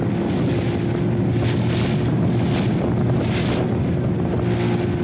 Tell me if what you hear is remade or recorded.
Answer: recorded